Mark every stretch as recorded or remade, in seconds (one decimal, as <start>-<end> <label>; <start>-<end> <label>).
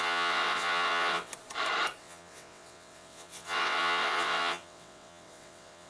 0.0-1.3 remade; 1.3-2.0 recorded; 2.0-5.9 remade